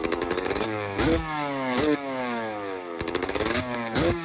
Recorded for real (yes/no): no